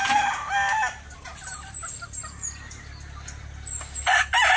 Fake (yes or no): no